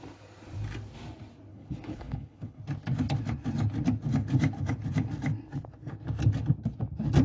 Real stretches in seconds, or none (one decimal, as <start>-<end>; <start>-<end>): 0.0-1.5; 2.6-7.2